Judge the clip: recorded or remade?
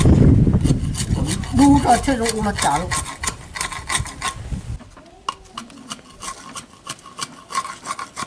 recorded